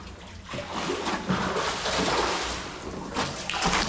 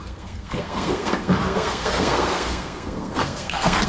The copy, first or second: second